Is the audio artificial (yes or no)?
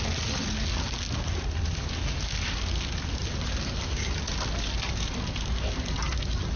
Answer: no